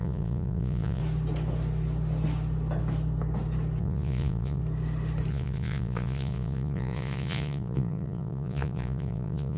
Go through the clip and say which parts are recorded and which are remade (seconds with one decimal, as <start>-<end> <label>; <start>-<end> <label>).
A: 0.0-1.0 remade; 1.0-3.8 recorded; 3.8-4.6 remade; 4.6-5.3 recorded; 5.3-9.6 remade